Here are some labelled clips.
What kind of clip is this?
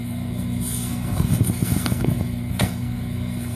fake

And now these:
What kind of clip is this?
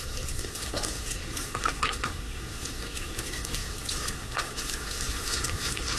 fake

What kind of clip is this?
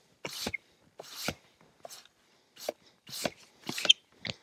real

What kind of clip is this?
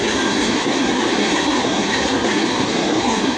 fake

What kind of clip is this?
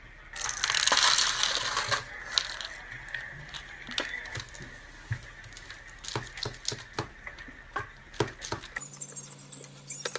real